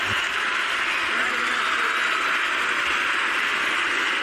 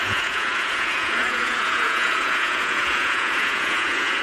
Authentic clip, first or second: first